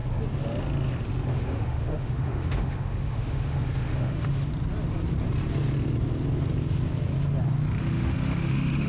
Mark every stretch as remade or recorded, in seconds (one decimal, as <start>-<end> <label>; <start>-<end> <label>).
0.0-1.3 recorded; 1.3-4.5 remade; 4.5-7.8 recorded; 7.8-8.9 remade